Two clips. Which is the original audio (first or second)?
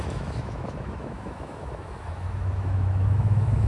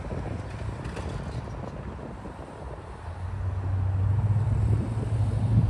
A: second